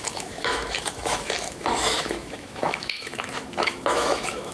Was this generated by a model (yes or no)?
yes